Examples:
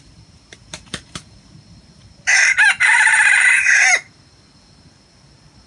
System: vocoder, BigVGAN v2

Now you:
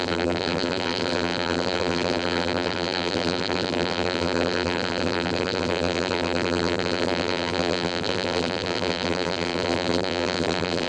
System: vocoder, BigVGAN v2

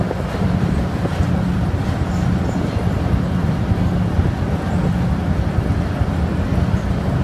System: none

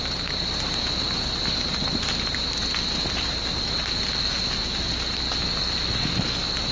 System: none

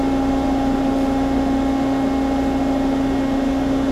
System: none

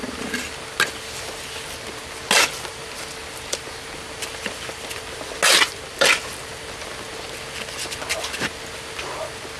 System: none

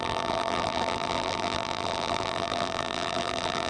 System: vocoder, BigVGAN v2